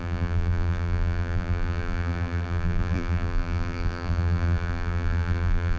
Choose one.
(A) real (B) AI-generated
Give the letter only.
B